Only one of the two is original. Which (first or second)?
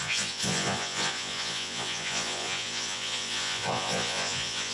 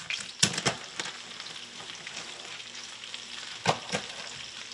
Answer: second